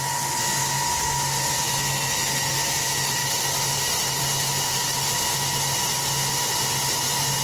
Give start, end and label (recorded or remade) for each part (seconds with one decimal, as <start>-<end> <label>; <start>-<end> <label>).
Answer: 0.0-7.4 recorded